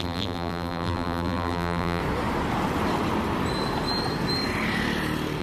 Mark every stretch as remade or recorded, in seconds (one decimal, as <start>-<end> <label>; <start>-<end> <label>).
0.0-2.0 remade; 2.0-5.4 recorded